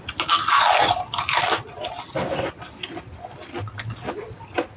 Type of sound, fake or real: real